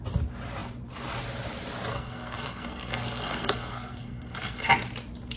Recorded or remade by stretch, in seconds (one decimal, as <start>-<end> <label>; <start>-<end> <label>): 0.0-1.9 recorded; 1.9-4.7 remade; 4.7-5.4 recorded